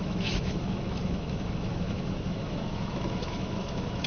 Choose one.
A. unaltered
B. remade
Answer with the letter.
B